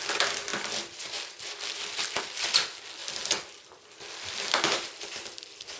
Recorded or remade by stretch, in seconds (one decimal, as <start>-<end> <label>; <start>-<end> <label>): 0.0-5.8 recorded